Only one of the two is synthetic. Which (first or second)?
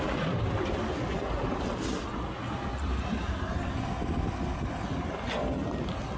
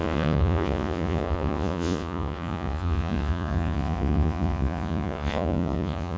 second